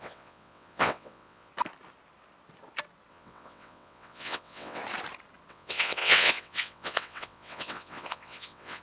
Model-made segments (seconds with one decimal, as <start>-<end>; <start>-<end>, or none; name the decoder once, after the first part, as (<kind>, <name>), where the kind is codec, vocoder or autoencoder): 0.0-1.5 (vocoder, WaveNeXt); 3.1-4.8; 5.5-8.8